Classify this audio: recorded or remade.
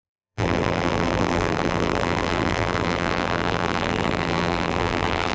remade